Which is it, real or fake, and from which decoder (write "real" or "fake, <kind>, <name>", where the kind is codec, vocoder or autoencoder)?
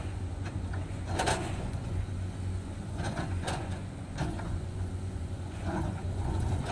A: fake, vocoder, Vocos